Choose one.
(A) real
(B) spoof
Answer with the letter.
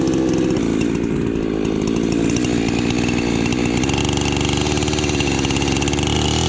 A